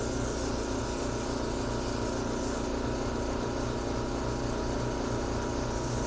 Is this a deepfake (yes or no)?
no